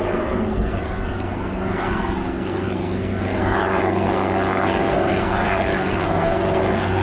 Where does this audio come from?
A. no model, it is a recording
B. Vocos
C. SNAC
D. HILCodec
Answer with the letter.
C